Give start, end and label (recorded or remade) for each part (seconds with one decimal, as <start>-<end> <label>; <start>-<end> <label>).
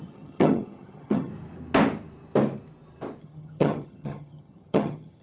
0.0-1.3 remade; 1.3-3.2 recorded; 3.2-5.2 remade